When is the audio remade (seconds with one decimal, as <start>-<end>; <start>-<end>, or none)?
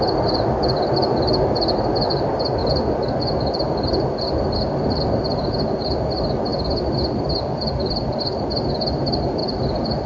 none